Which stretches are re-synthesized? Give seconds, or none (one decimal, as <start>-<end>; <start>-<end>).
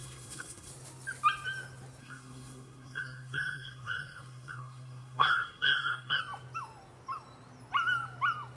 0.0-0.7; 2.0-6.2